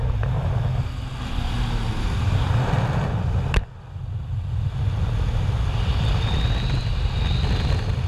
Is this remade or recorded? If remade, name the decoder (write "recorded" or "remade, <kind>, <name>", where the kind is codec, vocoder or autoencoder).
recorded